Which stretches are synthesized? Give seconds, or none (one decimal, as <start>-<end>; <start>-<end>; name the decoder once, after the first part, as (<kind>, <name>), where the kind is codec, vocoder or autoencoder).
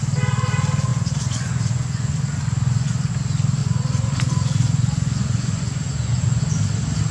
0.9-3.1 (vocoder, Vocos); 3.6-6.4